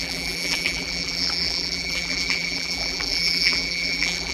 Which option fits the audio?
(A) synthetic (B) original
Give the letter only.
A